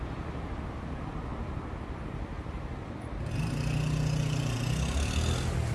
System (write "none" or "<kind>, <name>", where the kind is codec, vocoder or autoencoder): none